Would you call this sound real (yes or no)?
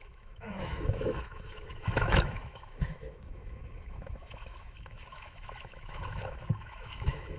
no